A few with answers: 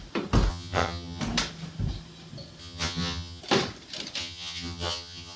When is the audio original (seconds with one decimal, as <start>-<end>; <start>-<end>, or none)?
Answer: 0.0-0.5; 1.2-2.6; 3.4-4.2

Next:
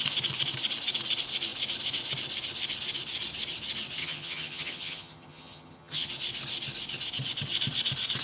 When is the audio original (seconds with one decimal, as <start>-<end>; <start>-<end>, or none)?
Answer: 0.0-4.0; 6.1-8.2

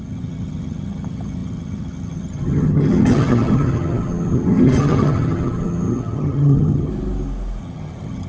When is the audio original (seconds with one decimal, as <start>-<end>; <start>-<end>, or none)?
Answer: 6.9-7.6

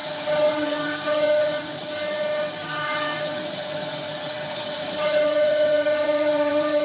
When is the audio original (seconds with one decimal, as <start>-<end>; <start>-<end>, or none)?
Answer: none

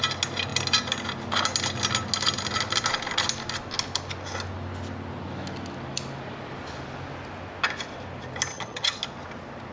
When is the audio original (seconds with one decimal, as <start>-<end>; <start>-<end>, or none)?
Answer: 0.0-8.5; 9.0-9.7